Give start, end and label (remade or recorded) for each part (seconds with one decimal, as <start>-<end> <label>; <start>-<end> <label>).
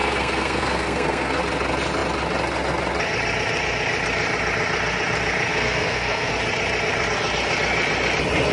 0.0-1.4 remade; 1.4-5.5 recorded; 5.5-6.3 remade; 6.3-8.5 recorded